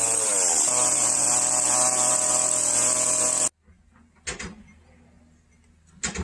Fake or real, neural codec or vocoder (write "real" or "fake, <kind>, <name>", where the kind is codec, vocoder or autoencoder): real